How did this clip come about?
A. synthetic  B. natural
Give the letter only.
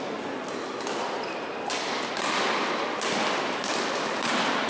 B